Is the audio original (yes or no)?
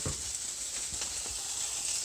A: yes